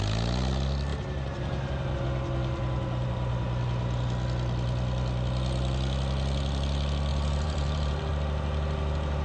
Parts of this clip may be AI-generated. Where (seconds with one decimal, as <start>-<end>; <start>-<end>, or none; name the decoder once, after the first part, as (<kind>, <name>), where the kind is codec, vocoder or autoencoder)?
0.9-2.0 (vocoder, BigVGAN v2); 7.1-8.1